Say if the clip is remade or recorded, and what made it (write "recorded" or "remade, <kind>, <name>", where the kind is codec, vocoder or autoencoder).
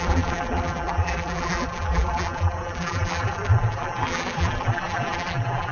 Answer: remade, vocoder, BigVGAN v2